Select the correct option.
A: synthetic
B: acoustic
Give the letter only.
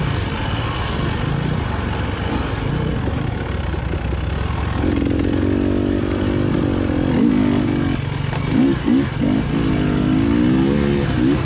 B